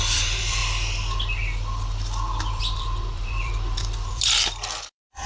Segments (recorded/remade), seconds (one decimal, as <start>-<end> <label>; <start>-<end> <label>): 0.0-0.6 remade; 0.6-2.5 recorded; 2.5-5.3 remade